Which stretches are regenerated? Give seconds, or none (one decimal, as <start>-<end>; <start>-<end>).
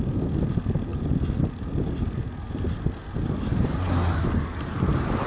none